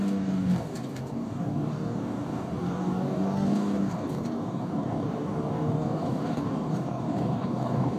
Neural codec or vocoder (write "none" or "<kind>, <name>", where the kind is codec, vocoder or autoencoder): codec, DAC